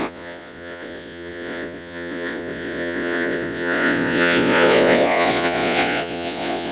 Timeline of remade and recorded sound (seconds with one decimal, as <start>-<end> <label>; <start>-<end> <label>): 0.0-6.7 remade